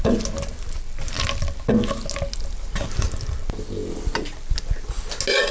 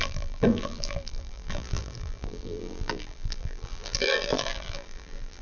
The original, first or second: first